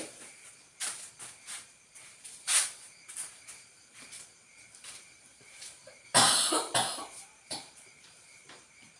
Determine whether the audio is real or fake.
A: fake